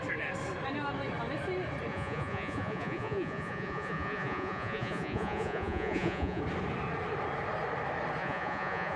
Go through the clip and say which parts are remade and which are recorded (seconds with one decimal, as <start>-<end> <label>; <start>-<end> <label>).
0.0-1.9 recorded; 1.9-6.4 remade; 6.4-8.2 recorded; 8.2-9.0 remade